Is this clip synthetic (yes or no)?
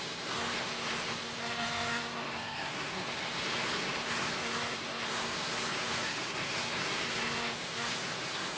yes